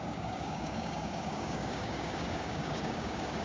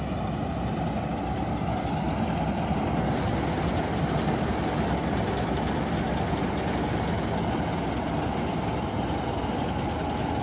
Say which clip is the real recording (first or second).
second